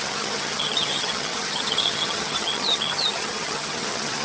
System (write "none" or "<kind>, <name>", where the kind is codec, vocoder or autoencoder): vocoder, HiFi-GAN